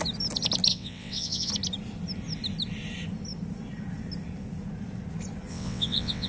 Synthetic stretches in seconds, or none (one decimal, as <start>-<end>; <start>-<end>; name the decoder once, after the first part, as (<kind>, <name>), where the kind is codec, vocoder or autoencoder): 0.7-1.5 (vocoder, WaveNeXt); 5.5-6.3